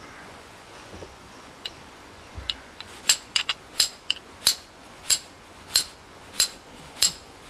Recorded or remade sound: remade